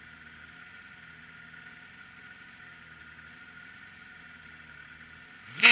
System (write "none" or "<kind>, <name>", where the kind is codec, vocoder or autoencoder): none